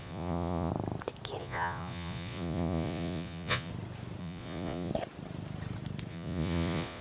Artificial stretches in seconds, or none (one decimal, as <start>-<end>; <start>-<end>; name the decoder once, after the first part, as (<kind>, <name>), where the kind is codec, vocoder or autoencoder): 0.0-0.7 (vocoder, Vocos); 1.4-3.7; 4.2-4.9; 6.1-7.0